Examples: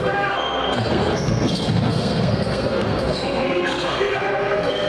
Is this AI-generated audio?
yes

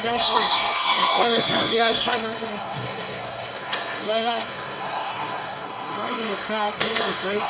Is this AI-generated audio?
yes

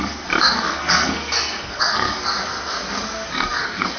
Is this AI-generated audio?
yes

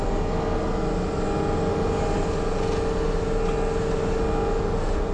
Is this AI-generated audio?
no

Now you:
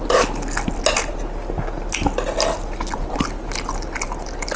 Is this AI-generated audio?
no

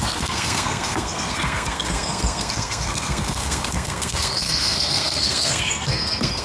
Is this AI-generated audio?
yes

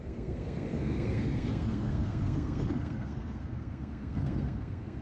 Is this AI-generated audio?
yes